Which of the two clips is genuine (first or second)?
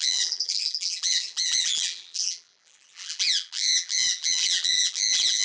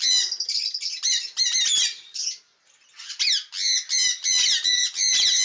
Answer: second